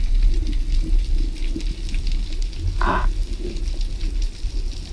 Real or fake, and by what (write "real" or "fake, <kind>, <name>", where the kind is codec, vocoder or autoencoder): real